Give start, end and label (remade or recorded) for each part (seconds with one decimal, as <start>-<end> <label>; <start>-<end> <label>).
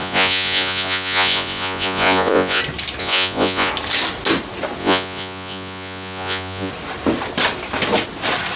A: 0.0-2.6 remade; 2.6-3.0 recorded; 3.0-3.7 remade; 3.7-4.8 recorded; 4.8-6.7 remade; 6.7-8.6 recorded